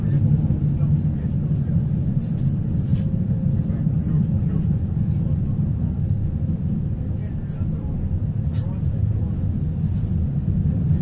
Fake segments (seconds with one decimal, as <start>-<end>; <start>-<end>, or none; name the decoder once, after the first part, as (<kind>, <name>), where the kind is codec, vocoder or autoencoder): 2.9-3.9 (vocoder, BigVGAN v2)